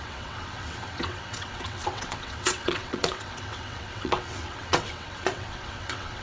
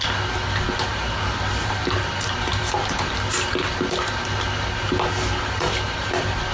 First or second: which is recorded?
second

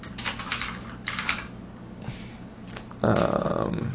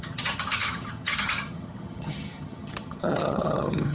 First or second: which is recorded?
first